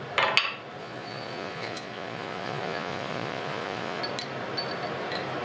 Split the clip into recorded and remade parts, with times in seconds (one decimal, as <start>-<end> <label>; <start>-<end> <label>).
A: 0.0-0.8 recorded; 0.8-4.0 remade; 4.0-5.4 recorded

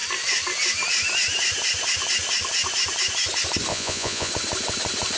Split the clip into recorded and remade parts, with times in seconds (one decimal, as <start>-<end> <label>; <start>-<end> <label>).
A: 0.0-3.7 recorded; 3.7-4.3 remade; 4.3-5.2 recorded

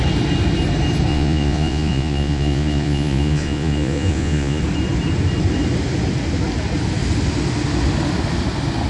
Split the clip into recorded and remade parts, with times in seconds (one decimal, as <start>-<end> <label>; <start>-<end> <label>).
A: 0.0-1.1 recorded; 1.1-4.6 remade; 4.6-8.9 recorded